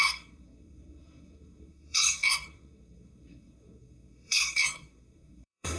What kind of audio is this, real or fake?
fake